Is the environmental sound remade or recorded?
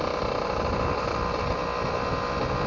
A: recorded